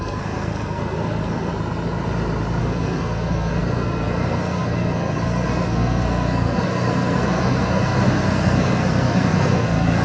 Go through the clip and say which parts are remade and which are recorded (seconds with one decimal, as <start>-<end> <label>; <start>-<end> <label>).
0.0-1.5 remade; 1.5-2.6 recorded; 2.6-10.0 remade